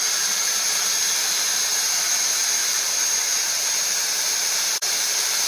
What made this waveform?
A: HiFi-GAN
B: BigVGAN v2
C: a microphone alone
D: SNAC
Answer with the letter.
B